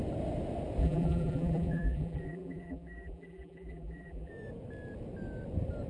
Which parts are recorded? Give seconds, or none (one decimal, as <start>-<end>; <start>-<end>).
0.0-0.8; 4.3-5.9